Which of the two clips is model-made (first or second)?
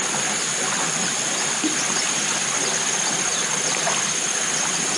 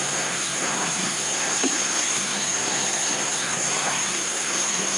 second